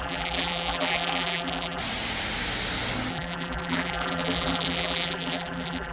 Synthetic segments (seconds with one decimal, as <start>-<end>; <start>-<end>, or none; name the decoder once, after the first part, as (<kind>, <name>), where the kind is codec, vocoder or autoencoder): 0.0-1.8 (vocoder, BigVGAN v2); 3.1-5.9